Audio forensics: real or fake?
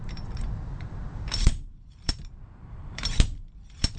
fake